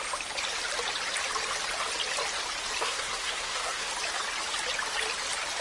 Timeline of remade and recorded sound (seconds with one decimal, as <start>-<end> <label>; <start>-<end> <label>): 0.0-2.8 recorded; 2.8-3.9 remade; 3.9-5.6 recorded